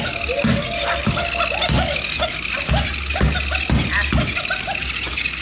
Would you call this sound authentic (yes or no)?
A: yes